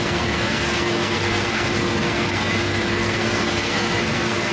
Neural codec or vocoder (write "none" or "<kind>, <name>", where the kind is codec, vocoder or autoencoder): codec, SNAC